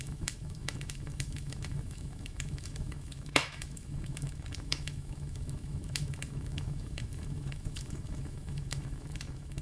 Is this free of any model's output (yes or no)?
no